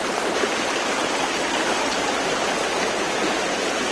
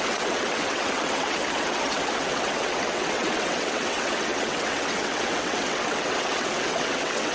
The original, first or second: first